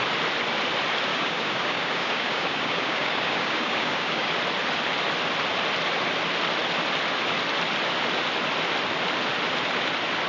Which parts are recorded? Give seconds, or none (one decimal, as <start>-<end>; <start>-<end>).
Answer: 0.0-1.1; 4.3-10.3